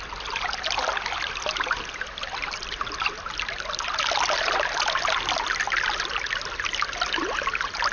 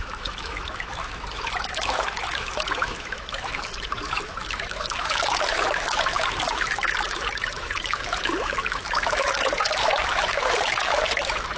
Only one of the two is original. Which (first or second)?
first